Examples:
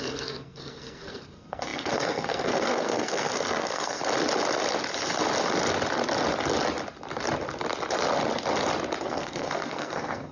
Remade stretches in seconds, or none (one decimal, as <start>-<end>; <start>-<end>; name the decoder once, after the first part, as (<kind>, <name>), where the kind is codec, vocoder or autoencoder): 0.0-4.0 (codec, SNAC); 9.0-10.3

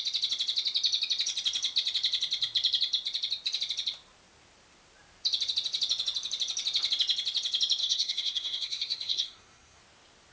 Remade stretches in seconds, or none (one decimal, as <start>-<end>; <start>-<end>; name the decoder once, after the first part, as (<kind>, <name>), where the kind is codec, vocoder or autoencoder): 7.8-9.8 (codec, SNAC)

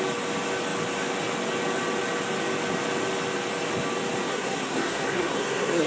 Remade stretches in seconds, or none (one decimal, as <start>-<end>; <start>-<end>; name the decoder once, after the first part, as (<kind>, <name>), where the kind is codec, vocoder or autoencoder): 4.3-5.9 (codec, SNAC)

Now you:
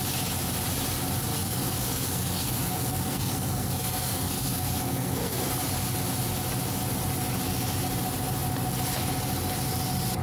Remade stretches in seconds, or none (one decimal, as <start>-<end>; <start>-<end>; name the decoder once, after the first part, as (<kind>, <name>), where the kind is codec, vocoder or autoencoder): 1.3-5.5 (codec, SNAC)